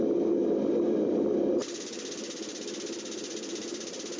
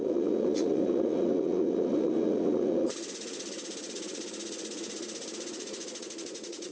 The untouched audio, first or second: first